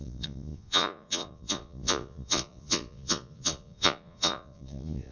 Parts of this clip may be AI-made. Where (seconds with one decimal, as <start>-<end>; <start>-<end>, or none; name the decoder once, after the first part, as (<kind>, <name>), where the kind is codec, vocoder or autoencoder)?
0.0-5.1 (vocoder, Vocos)